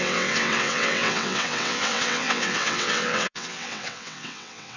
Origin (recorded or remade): remade